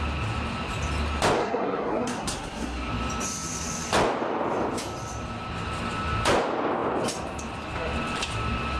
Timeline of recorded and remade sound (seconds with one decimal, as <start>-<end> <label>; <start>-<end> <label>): 0.0-1.4 recorded; 1.4-2.9 remade; 2.9-8.8 recorded